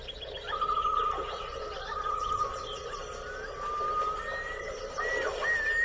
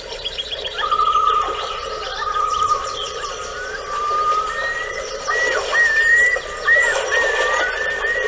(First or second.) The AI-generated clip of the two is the second